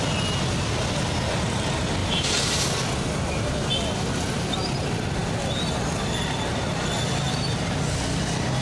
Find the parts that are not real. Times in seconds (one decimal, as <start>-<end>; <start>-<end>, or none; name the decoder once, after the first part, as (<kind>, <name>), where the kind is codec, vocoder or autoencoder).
2.0-2.6 (vocoder, BigVGAN v2)